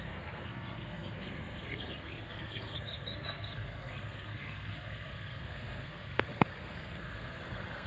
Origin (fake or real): fake